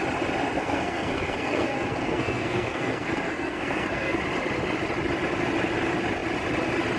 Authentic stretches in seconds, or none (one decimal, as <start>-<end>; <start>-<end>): 0.0-0.5; 4.2-7.0